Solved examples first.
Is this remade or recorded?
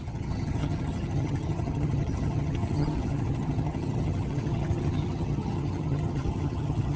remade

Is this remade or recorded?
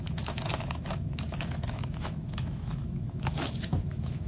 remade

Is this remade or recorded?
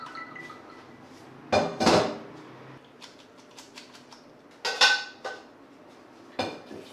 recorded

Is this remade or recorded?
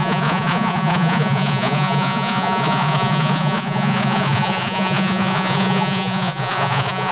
remade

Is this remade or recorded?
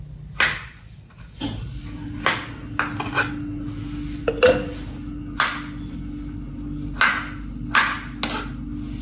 recorded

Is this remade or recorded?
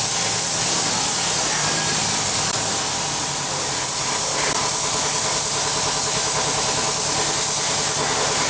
recorded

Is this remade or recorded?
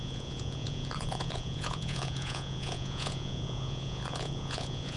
remade